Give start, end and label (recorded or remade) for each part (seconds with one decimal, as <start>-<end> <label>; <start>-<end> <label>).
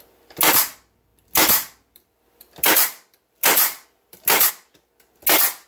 0.0-1.1 recorded; 1.1-4.5 remade; 4.5-5.7 recorded